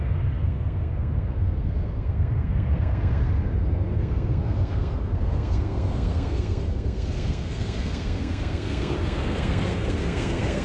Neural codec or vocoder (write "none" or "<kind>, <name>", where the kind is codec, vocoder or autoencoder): codec, SNAC